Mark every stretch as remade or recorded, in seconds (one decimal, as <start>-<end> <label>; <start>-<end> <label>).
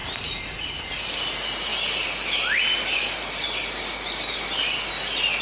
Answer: 0.0-0.8 remade; 0.8-5.4 recorded